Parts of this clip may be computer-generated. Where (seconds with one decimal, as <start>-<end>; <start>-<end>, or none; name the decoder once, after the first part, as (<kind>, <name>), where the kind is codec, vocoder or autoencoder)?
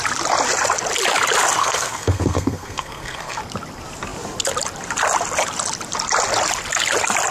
1.6-3.4 (codec, SNAC)